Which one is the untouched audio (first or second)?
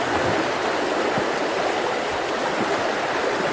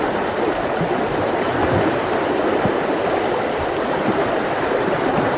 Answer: first